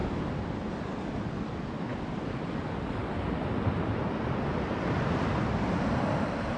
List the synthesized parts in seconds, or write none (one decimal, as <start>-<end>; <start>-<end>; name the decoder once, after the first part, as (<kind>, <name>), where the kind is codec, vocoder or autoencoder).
none